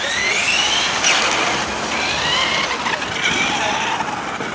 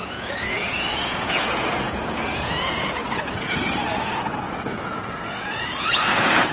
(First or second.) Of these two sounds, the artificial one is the second